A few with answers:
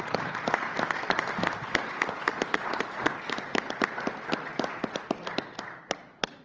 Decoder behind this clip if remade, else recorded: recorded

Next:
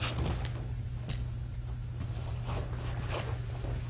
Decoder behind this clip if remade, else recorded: recorded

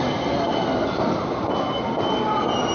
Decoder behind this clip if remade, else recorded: recorded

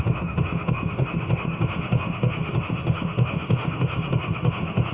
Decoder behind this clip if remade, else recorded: remade, autoencoder, DAC-VAE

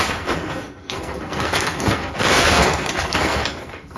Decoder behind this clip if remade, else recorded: remade, codec, SNAC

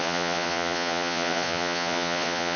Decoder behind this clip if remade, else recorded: remade, vocoder, Vocos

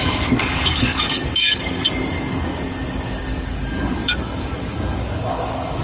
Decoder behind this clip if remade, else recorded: remade, codec, DAC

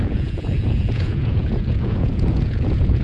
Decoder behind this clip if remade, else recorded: remade, vocoder, Vocos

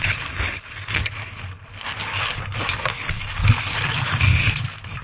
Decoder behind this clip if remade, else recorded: recorded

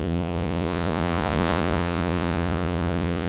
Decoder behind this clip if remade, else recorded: remade, vocoder, Vocos